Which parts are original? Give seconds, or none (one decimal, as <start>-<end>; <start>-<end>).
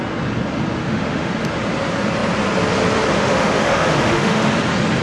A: 0.0-0.8; 1.3-3.1; 4.5-5.0